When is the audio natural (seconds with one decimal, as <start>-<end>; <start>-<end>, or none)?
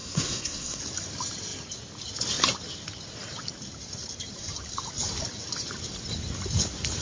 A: 0.8-7.0